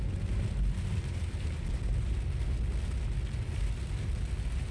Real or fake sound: real